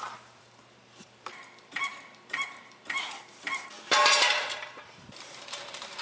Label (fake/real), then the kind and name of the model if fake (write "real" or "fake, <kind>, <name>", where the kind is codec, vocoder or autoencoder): fake, vocoder, BigVGAN v2